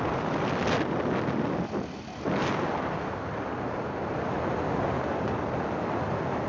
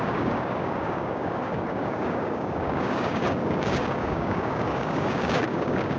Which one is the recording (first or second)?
first